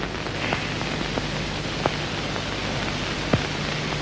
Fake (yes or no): no